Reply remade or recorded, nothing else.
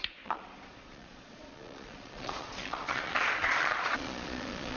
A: remade